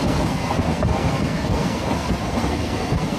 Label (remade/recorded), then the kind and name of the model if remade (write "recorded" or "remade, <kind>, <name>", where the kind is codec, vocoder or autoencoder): remade, codec, SNAC